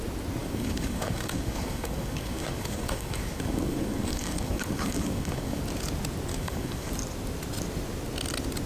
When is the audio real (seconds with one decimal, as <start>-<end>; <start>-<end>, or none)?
0.0-0.4; 5.6-6.3; 6.9-8.7